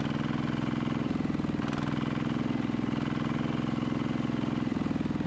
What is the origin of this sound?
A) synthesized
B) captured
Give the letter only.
B